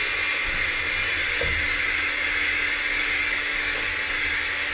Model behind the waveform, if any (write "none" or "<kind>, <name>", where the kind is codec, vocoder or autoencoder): none